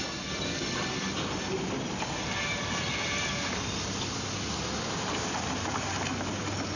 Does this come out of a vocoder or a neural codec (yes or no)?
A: no